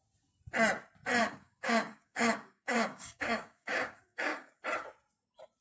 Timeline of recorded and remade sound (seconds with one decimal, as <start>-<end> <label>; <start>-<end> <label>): 0.0-1.2 recorded; 1.2-4.6 remade; 4.6-5.6 recorded